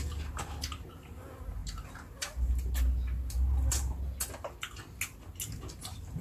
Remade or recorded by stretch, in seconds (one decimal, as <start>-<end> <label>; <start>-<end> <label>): 0.0-6.2 recorded